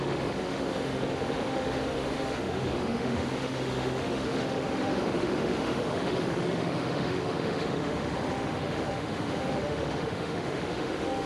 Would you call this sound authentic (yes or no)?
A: no